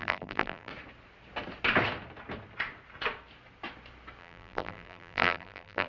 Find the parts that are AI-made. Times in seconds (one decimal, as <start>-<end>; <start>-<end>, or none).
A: 0.0-0.7; 4.2-5.9

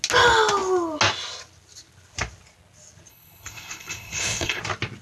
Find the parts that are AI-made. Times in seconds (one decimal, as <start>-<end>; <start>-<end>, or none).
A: 3.1-4.6